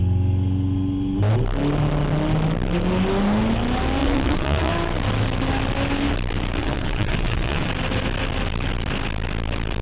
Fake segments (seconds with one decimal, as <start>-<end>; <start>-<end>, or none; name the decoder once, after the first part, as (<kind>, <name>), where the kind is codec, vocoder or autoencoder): 4.0-4.7 (vocoder, WaveNeXt); 6.6-7.7